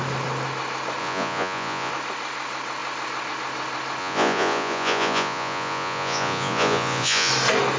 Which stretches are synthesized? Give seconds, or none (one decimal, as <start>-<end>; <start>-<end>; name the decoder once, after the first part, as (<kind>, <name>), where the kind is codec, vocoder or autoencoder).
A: 1.0-1.9 (vocoder, Vocos); 4.0-7.3